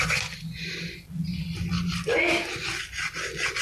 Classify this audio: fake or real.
real